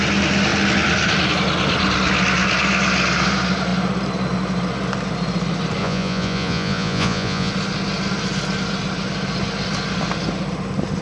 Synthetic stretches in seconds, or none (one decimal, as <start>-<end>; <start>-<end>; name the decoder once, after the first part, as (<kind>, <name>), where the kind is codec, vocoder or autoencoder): 5.8-7.5 (vocoder, Vocos)